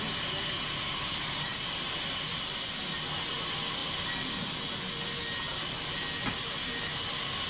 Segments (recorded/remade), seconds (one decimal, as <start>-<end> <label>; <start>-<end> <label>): 0.0-7.5 recorded